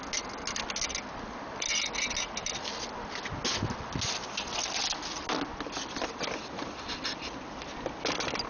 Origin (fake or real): real